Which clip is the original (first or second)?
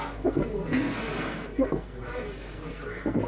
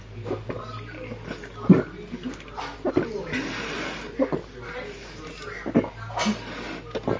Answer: second